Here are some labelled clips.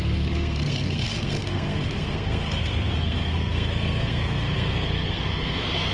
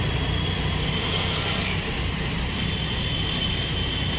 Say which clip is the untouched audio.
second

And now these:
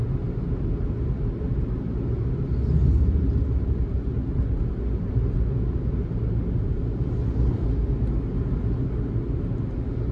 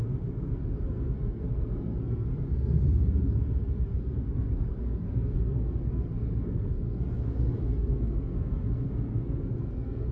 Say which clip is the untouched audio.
first